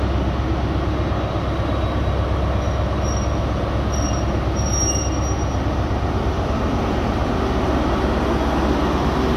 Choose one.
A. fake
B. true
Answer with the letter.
B